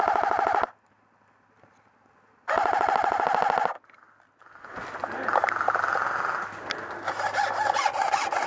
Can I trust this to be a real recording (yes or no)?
yes